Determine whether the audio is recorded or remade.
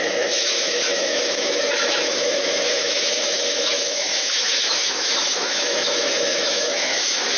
remade